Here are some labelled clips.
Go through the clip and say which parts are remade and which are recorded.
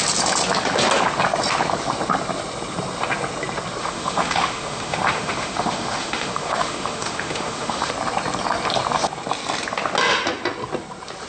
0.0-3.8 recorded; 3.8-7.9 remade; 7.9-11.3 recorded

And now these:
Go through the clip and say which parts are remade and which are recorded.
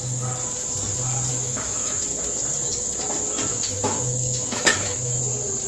0.0-1.3 recorded; 1.3-2.0 remade; 2.0-3.5 recorded; 3.5-5.2 remade; 5.2-5.7 recorded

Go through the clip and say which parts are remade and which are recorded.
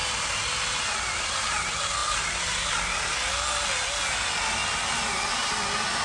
0.0-6.0 recorded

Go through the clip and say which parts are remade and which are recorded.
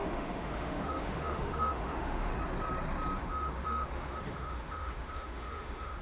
0.0-2.3 remade; 2.3-3.2 recorded; 3.2-6.0 remade